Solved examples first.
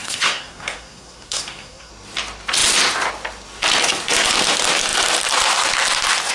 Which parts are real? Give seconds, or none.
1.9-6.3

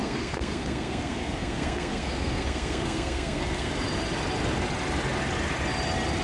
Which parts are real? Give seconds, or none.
3.7-6.2

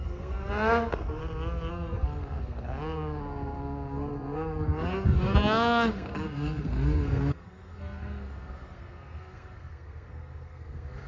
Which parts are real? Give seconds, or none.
1.2-1.7

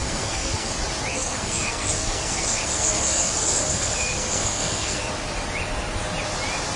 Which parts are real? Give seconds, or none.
0.7-1.1; 5.1-6.8

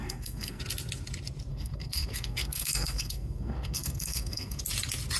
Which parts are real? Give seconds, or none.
0.6-1.5; 4.6-5.2

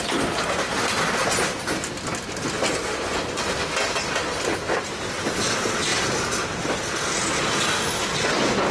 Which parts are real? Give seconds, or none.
0.0-8.7

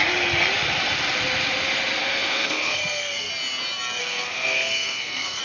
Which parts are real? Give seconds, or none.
0.0-2.0; 3.3-4.0

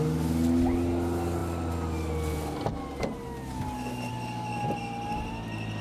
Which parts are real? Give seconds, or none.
0.0-5.8